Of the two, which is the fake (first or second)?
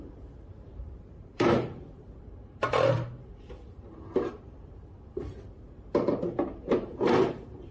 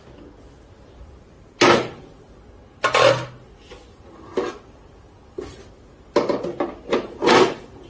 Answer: first